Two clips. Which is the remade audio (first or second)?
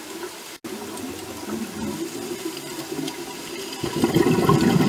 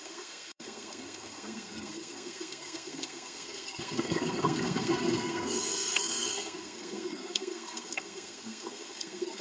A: second